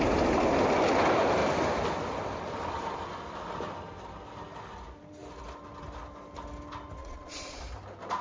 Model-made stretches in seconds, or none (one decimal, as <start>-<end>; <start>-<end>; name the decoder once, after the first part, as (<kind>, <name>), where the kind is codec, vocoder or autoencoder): 7.0-7.6 (vocoder, Vocos)